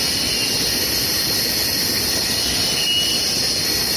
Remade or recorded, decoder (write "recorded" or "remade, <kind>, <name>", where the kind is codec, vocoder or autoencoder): recorded